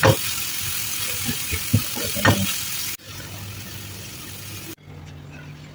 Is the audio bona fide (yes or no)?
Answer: yes